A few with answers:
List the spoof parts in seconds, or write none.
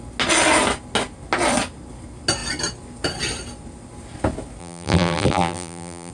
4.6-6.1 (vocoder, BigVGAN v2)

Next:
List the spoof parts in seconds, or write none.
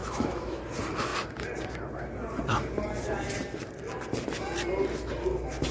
0.0-0.6 (autoencoder, DAC-VAE)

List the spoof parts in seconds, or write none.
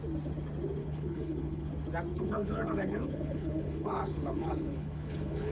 0.8-1.7 (codec, HILCodec); 2.1-5.5